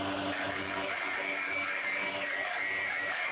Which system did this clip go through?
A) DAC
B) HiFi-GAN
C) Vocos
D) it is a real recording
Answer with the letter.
A